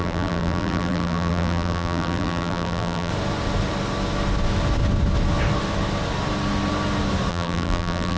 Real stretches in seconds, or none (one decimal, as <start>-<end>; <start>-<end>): 3.1-7.3